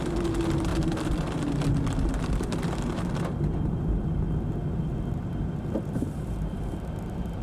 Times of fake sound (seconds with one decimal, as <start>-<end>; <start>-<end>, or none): none